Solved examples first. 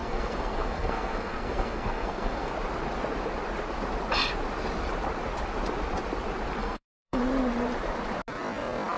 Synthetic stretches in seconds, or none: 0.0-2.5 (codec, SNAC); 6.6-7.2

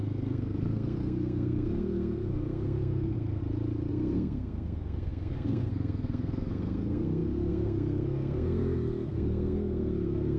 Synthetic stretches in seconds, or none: 0.0-3.4 (codec, SNAC); 3.9-10.4